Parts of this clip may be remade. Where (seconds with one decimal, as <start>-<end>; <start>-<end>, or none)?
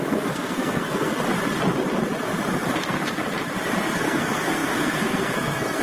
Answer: 0.0-1.1; 2.8-3.2; 4.0-5.8